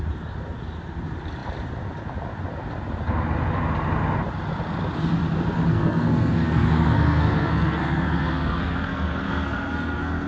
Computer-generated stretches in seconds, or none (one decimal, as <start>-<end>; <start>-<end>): 5.7-10.3